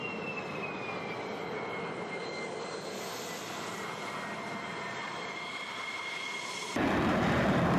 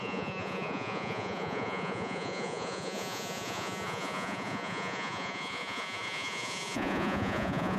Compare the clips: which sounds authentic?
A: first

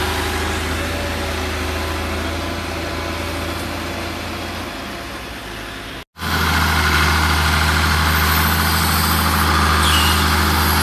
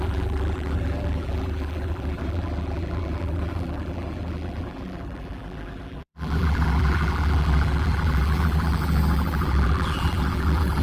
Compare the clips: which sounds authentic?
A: first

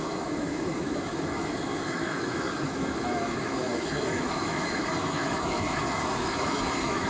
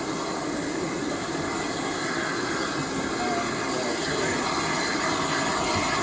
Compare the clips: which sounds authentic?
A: second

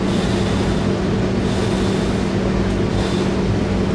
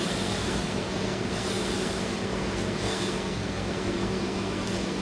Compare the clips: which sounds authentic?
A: first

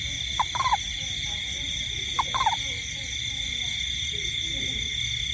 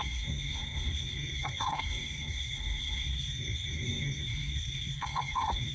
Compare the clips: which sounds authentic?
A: first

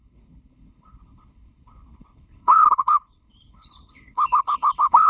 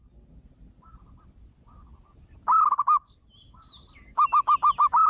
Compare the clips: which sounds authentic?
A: second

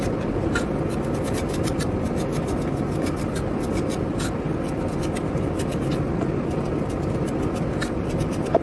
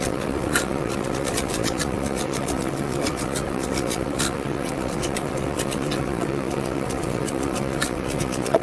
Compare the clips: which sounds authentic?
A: first